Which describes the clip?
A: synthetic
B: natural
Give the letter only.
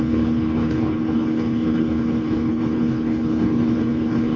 A